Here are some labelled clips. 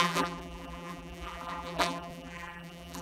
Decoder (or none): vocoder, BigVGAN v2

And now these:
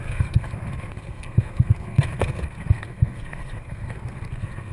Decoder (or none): codec, SNAC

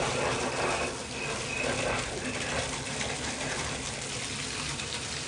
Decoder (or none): none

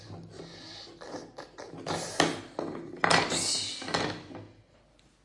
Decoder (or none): none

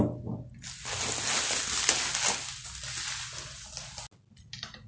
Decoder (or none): none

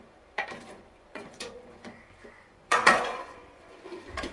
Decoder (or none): vocoder, Vocos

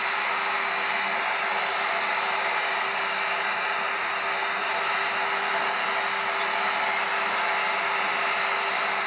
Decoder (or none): none